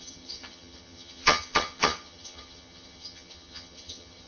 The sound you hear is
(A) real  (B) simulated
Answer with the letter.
B